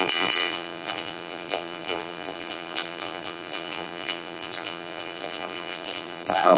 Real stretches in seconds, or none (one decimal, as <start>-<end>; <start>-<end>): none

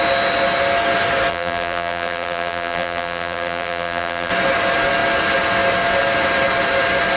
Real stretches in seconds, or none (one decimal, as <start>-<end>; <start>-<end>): 0.0-1.3; 4.3-7.2

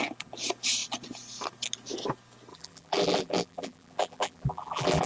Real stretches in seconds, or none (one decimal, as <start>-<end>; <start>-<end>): 0.0-2.5

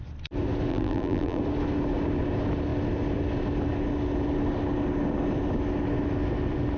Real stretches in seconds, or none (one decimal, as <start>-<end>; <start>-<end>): 0.0-0.7; 1.4-6.8